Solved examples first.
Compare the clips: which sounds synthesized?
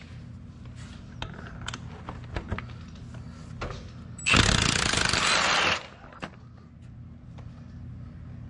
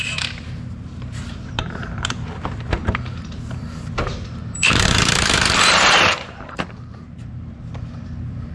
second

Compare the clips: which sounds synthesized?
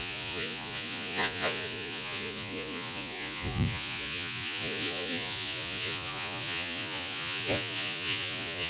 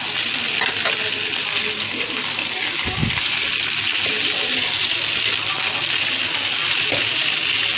first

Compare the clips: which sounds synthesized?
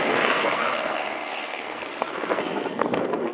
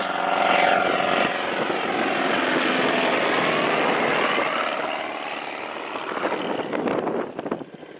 first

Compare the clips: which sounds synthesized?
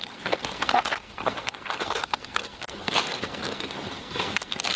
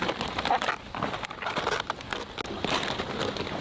first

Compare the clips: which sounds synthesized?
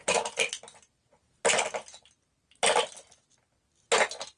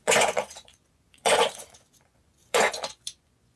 second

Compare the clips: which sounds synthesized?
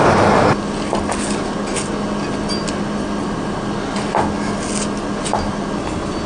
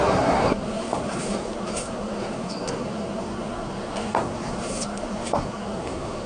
second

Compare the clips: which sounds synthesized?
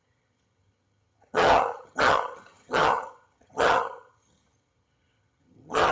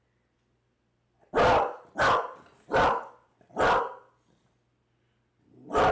first